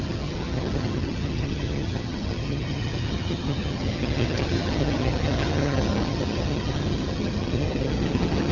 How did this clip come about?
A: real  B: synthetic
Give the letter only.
B